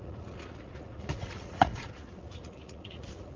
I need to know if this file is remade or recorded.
remade